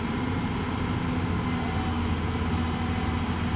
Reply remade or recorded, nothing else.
recorded